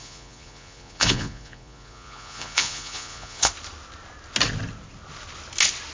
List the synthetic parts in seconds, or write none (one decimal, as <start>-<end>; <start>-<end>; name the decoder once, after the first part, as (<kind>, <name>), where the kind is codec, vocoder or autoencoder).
0.0-3.5 (vocoder, Vocos)